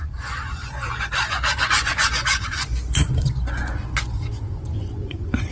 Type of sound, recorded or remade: remade